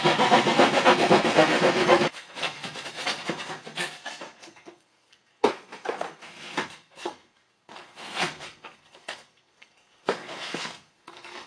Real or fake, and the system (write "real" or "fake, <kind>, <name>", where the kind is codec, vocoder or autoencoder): fake, codec, SNAC